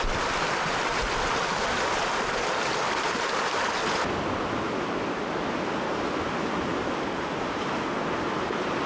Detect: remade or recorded recorded